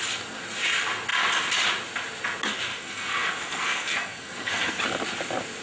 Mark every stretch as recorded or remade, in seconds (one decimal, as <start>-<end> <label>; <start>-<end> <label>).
0.0-2.7 recorded; 2.7-4.8 remade; 4.8-5.6 recorded